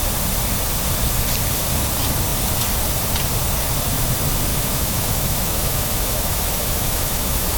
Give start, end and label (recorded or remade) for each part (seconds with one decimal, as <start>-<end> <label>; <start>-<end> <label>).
0.0-4.5 recorded; 4.5-7.6 remade